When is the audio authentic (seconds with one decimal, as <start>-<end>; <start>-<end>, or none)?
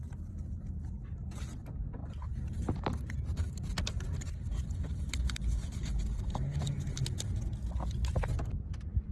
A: 0.0-2.0; 5.1-9.1